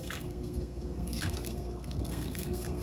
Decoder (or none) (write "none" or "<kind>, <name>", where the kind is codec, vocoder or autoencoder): codec, SNAC